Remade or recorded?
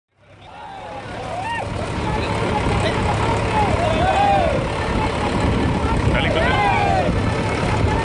recorded